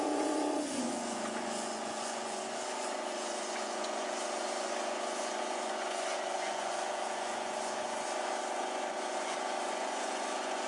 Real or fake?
fake